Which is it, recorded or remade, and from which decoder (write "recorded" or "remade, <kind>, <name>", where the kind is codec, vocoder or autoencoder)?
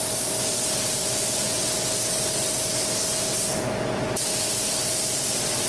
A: recorded